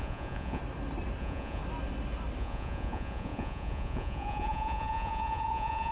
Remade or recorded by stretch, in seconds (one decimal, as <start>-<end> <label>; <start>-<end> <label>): 0.0-0.6 remade; 0.6-1.2 recorded; 1.2-1.6 remade; 1.6-2.4 recorded; 2.4-5.9 remade